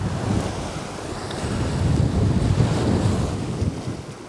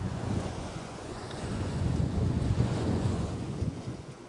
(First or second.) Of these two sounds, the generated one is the second